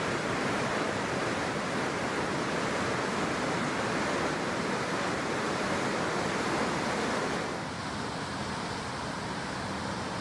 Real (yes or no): no